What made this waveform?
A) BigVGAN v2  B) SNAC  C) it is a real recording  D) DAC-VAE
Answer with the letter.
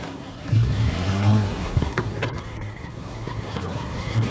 B